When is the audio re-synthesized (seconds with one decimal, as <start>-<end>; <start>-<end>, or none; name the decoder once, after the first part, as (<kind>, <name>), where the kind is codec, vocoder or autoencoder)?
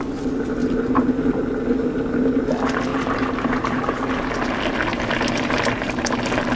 0.6-1.2 (vocoder, BigVGAN v2); 2.9-4.1; 4.9-6.1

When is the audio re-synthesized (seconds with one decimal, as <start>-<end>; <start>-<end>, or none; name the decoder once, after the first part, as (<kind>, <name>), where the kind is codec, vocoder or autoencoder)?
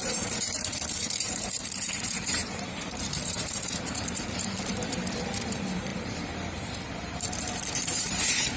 0.0-8.6 (vocoder, BigVGAN v2)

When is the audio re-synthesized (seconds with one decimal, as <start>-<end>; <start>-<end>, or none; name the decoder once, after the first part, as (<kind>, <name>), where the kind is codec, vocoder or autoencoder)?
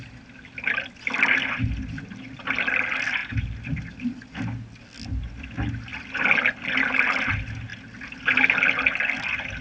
none